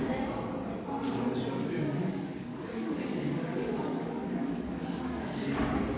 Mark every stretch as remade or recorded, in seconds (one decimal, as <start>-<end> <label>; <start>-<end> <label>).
0.0-2.0 recorded; 2.0-5.6 remade; 5.6-6.0 recorded